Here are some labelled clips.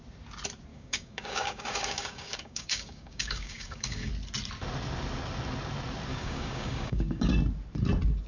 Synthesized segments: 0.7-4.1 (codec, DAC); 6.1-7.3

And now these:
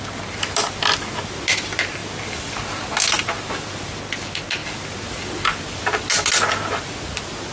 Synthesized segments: none

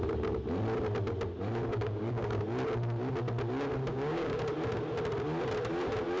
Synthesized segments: 1.7-2.4 (codec, DAC); 3.9-4.4

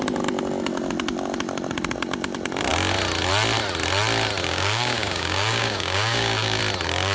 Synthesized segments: 4.4-6.6 (codec, DAC)

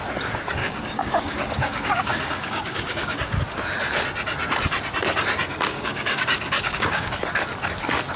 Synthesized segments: 0.6-3.4 (codec, DAC); 5.7-7.1

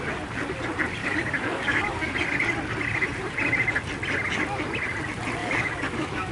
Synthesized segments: 1.0-2.1 (codec, DAC); 5.4-6.3

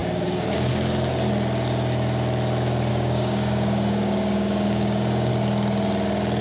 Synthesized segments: 0.0-0.7 (codec, DAC); 2.9-5.3